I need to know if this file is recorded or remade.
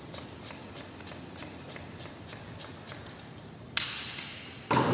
recorded